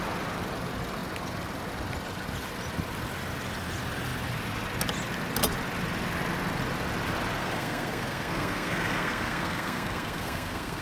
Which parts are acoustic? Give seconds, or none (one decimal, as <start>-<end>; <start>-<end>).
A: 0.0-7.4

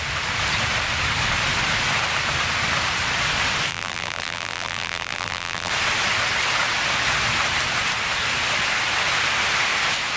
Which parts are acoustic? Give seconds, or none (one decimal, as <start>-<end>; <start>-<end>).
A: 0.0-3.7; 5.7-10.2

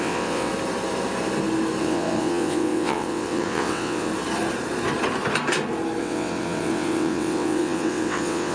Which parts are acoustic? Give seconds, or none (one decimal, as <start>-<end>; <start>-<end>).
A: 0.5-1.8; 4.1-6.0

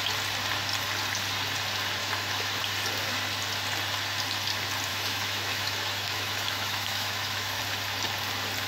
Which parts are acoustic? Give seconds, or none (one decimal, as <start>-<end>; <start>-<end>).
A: 0.0-2.0; 2.6-4.9; 7.6-8.7

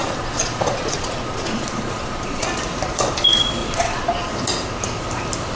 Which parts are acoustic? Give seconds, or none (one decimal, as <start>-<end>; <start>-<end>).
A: 2.4-3.6; 4.1-5.6

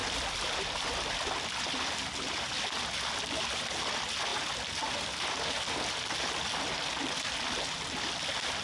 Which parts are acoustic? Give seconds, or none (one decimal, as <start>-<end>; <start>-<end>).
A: 0.0-8.6

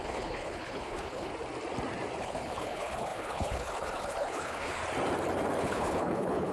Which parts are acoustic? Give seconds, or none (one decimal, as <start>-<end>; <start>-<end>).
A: 1.3-2.2; 4.8-5.6